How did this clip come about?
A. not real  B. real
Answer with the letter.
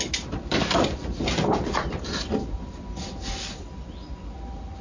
B